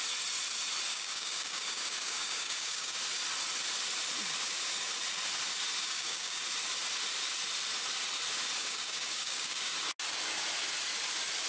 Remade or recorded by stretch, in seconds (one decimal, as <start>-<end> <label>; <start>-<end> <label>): 0.0-0.9 recorded; 0.9-3.0 remade; 3.0-5.8 recorded; 5.8-6.4 remade; 6.4-8.6 recorded; 8.6-9.7 remade; 9.7-11.5 recorded